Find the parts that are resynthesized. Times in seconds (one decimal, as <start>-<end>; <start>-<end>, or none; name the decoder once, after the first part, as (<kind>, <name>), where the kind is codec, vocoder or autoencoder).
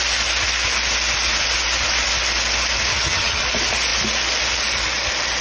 2.9-3.4 (vocoder, HiFi-GAN)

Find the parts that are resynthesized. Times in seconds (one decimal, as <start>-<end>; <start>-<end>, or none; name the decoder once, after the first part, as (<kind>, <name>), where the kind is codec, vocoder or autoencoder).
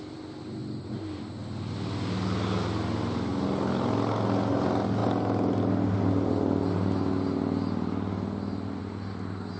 none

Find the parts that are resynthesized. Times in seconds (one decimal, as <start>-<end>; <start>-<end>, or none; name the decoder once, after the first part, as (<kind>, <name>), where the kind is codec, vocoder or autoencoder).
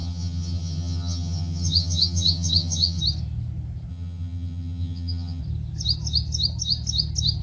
0.0-3.0 (vocoder, HiFi-GAN); 3.9-5.4